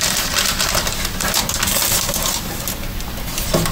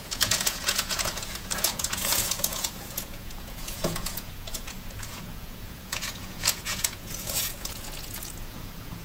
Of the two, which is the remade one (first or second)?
second